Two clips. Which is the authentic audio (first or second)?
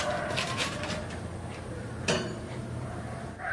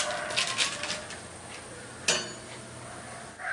second